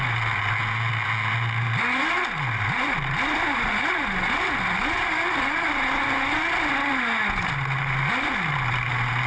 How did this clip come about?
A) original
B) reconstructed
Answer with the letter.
A